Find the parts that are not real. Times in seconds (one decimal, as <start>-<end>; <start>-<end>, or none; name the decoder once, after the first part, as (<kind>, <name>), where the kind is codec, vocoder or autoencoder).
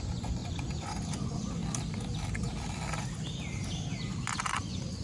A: 0.0-1.6 (vocoder, Vocos); 4.5-5.0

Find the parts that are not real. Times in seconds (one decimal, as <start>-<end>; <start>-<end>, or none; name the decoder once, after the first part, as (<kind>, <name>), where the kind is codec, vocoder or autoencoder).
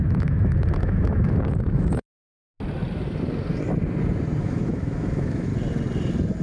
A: 0.0-2.1 (autoencoder, DAC-VAE); 4.4-5.5